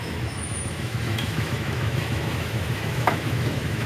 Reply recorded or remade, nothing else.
remade